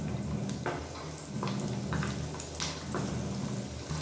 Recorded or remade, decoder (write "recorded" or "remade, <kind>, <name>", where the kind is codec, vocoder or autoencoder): recorded